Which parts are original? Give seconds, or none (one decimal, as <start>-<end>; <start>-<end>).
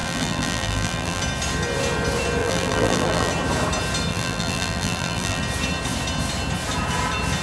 1.2-2.4; 3.3-4.1; 5.4-7.4